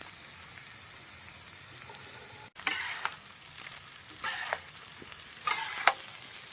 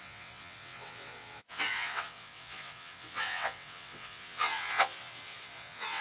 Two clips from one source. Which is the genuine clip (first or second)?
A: first